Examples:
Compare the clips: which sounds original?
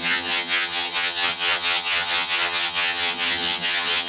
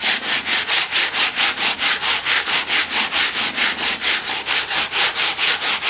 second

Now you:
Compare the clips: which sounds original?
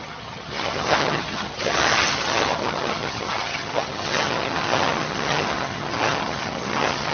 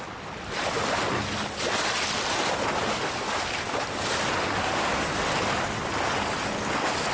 second